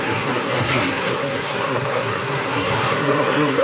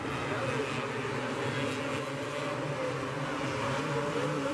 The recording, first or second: second